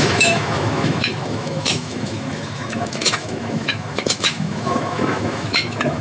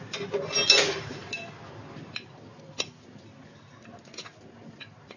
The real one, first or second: second